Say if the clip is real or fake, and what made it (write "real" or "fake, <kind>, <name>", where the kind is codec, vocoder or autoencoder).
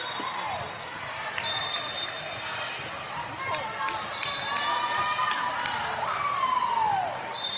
real